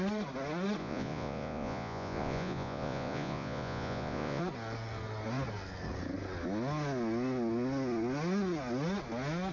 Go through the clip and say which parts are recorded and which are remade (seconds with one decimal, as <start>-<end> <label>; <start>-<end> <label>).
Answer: 0.0-0.8 recorded; 0.8-4.4 remade; 4.4-9.5 recorded